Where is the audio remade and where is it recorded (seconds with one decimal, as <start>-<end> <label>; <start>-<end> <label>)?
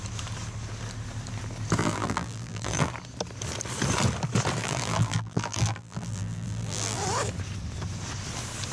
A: 0.0-1.8 recorded; 1.8-2.9 remade; 2.9-4.6 recorded; 4.6-7.0 remade; 7.0-8.7 recorded